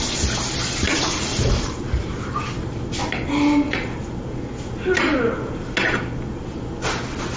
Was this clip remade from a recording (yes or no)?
no